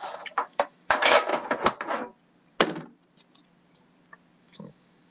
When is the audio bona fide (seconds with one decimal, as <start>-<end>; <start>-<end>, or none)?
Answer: 1.3-4.4